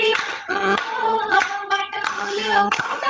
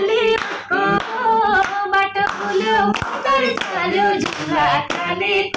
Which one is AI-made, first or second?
first